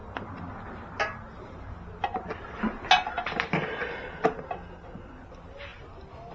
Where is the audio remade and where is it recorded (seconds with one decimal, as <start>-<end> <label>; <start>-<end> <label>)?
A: 0.0-6.3 recorded